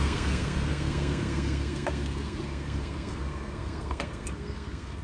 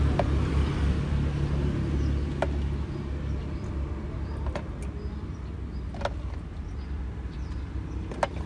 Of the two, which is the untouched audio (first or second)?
second